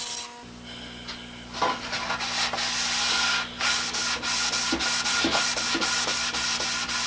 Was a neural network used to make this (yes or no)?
no